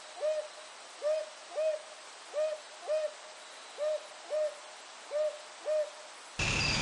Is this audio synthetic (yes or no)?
no